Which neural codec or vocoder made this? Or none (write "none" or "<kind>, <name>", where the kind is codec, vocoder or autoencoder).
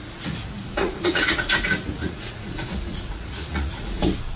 vocoder, Vocos